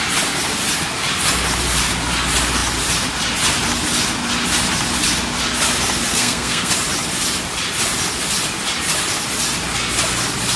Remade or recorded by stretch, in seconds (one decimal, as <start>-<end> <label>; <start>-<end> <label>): 0.0-6.1 recorded; 6.1-6.7 remade; 6.7-10.6 recorded

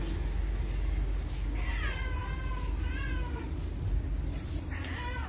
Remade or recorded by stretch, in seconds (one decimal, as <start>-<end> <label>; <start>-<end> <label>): 0.0-5.3 recorded

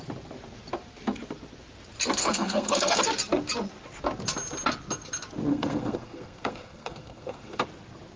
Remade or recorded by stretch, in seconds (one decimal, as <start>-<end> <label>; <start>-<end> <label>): 0.0-2.2 recorded; 2.2-3.0 remade; 3.0-5.5 recorded; 5.5-7.6 remade; 7.6-8.2 recorded

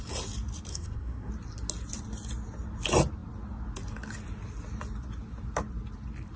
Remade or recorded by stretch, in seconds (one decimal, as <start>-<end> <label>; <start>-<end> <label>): 0.0-0.7 recorded; 0.7-1.3 remade; 1.3-6.4 recorded

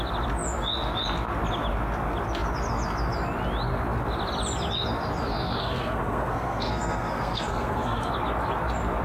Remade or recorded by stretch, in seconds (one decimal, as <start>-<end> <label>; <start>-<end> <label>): 0.0-5.6 recorded; 5.6-8.1 remade; 8.1-9.0 recorded

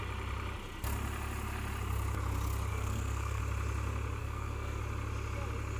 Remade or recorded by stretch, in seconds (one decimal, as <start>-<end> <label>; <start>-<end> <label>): 0.0-2.7 recorded; 2.7-3.4 remade; 3.4-4.2 recorded; 4.2-4.8 remade; 4.8-5.8 recorded